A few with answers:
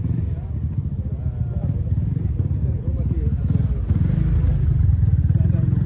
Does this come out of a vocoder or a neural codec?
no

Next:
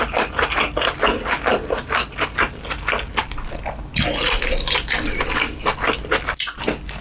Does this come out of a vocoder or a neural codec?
no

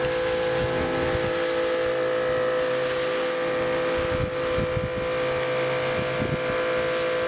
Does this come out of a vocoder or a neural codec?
no